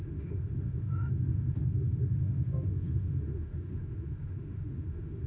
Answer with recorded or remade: remade